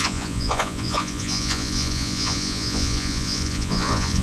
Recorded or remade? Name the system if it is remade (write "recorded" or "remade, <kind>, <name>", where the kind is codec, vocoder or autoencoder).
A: remade, vocoder, Vocos